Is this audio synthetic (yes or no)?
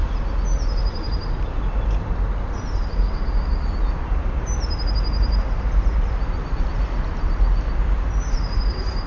no